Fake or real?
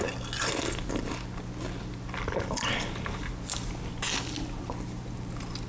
real